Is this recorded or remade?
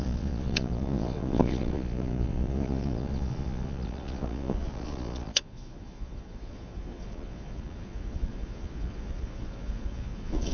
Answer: remade